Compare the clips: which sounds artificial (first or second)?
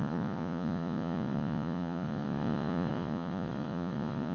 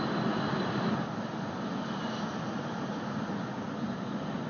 first